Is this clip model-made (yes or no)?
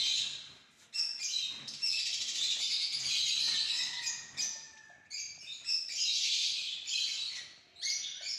no